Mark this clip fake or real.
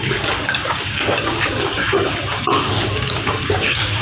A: fake